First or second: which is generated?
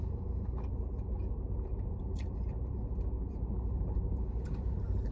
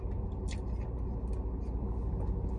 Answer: first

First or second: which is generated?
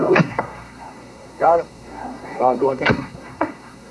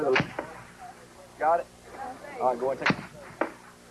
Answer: first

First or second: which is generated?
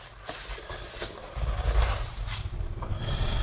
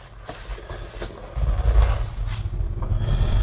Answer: first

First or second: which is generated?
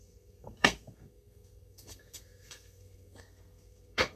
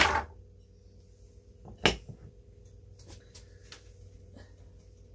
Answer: first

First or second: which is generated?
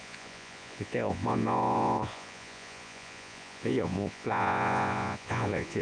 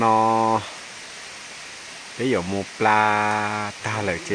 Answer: first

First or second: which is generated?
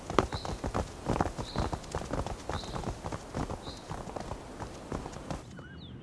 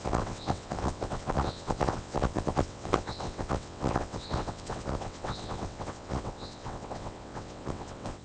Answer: second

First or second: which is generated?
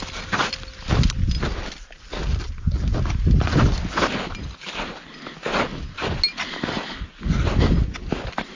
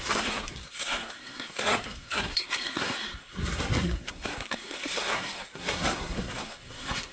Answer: second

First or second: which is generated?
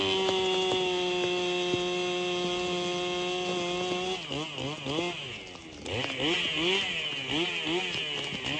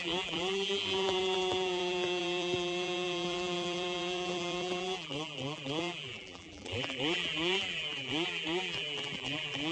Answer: second